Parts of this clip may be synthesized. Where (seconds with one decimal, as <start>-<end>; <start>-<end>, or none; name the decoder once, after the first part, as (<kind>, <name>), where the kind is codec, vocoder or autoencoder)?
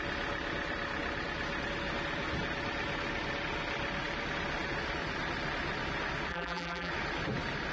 6.3-6.9 (vocoder, BigVGAN v2)